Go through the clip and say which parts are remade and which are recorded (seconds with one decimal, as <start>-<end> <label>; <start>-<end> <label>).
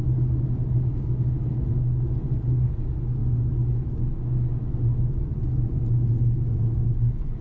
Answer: 0.0-4.9 recorded; 4.9-5.8 remade; 5.8-7.4 recorded